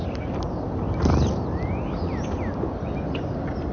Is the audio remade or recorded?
recorded